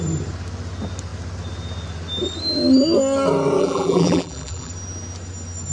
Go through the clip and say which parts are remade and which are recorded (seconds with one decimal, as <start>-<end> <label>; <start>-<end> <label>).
0.0-3.6 recorded; 3.6-4.7 remade; 4.7-5.7 recorded